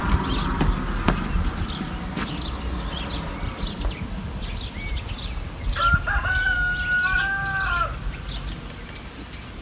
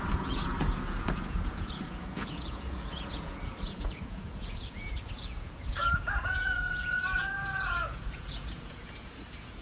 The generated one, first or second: second